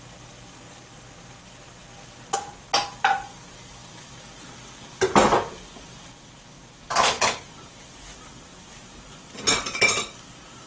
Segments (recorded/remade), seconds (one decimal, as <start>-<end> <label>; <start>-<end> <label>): 0.0-10.7 recorded